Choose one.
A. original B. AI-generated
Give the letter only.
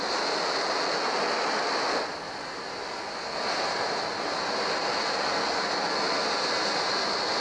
A